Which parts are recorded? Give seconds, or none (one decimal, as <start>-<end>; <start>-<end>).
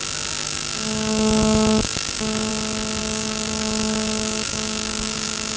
0.0-0.4; 2.5-3.0